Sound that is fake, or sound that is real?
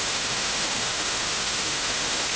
fake